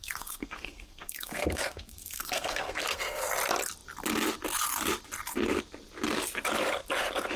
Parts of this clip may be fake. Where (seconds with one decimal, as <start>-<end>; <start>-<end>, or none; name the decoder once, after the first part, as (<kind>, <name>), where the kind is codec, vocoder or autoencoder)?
0.0-3.3 (codec, SNAC)